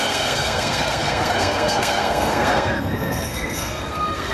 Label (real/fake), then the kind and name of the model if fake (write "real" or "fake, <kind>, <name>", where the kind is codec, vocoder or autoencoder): fake, codec, SNAC